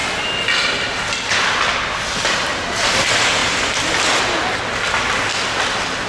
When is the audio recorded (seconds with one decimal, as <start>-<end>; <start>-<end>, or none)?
0.0-6.1